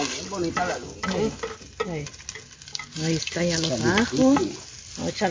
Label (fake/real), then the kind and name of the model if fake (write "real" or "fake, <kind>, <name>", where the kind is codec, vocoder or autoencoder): real